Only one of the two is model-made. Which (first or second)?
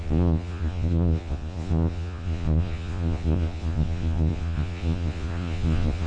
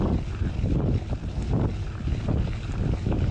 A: first